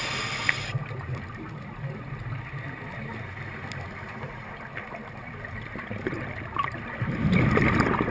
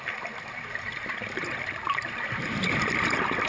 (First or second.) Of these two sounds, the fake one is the second